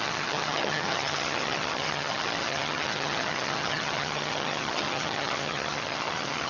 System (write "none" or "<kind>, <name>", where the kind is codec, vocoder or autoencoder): vocoder, HiFi-GAN